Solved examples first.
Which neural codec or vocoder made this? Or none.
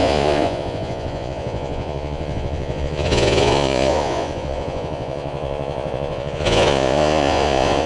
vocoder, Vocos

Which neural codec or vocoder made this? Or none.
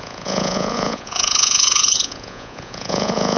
vocoder, Vocos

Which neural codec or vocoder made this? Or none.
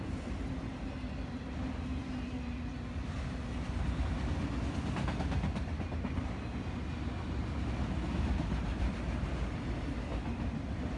none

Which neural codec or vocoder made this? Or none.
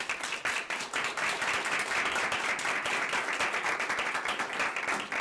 none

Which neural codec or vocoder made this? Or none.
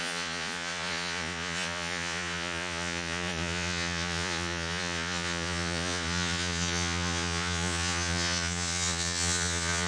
vocoder, Vocos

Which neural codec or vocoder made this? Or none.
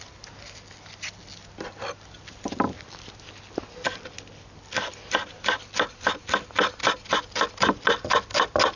none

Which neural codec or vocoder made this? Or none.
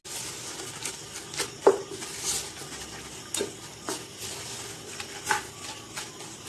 none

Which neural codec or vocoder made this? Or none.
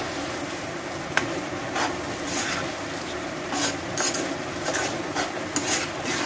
none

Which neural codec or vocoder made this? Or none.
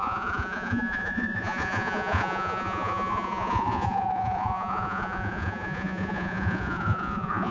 vocoder, Vocos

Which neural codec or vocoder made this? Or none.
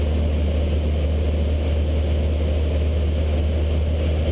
none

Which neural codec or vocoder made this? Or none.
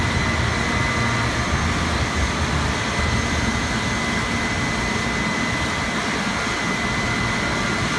none